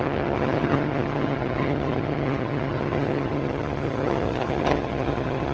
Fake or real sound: fake